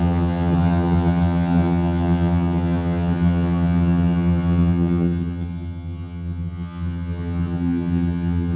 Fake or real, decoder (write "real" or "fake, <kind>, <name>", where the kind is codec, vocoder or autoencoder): fake, vocoder, HiFi-GAN